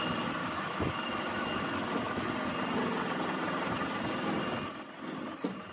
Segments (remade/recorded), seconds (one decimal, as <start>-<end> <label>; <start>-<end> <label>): 0.0-0.4 recorded; 0.4-2.3 remade; 2.3-5.7 recorded